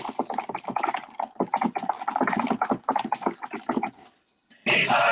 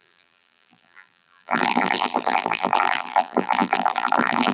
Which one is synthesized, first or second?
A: second